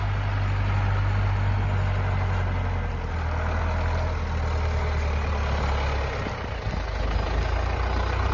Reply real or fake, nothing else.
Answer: real